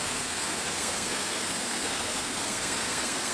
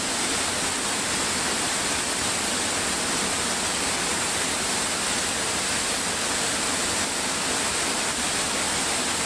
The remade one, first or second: first